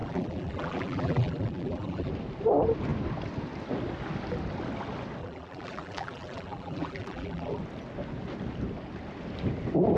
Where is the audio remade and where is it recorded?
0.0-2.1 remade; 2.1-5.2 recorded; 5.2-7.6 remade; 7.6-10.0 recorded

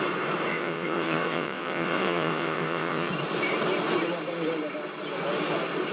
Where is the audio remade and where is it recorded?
0.0-0.5 recorded; 0.5-3.1 remade; 3.1-5.9 recorded

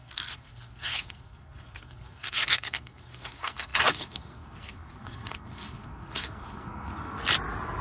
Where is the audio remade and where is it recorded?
0.0-7.2 remade; 7.2-7.8 recorded